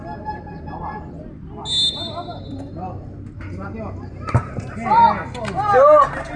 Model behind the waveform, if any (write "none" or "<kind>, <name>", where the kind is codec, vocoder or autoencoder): none